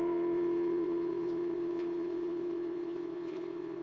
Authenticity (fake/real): fake